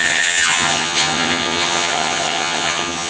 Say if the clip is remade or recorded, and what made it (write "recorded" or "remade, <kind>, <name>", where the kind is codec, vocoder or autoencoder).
remade, vocoder, HiFi-GAN